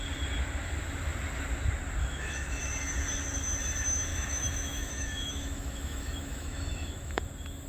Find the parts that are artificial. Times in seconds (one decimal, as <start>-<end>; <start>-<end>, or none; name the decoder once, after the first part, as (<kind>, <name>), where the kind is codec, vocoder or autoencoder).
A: 2.0-2.6 (autoencoder, DAC-VAE); 4.1-7.2